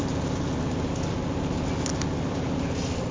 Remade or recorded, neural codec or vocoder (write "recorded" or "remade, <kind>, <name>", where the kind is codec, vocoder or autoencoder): recorded